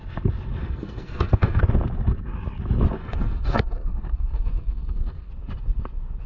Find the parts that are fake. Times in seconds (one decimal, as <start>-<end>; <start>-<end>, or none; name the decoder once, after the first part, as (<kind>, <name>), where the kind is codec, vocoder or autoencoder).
0.6-1.6 (codec, SNAC); 3.0-5.3